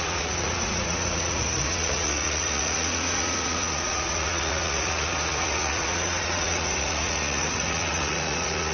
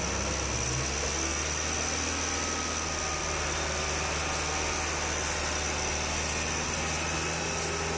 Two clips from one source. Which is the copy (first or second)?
first